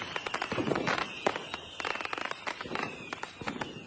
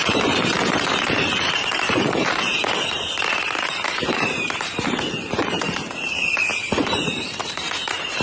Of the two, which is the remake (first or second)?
second